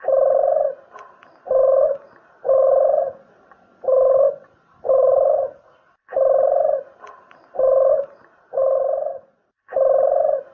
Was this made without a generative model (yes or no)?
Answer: yes